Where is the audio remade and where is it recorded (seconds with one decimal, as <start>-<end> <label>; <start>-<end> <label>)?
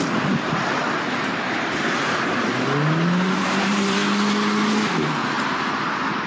0.0-2.5 remade; 2.5-3.4 recorded; 3.4-4.0 remade; 4.0-4.7 recorded; 4.7-6.3 remade